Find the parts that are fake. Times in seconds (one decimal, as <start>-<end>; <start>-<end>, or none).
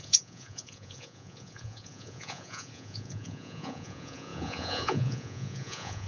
0.0-6.1